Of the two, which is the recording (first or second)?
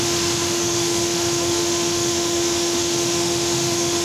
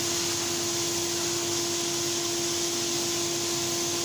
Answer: second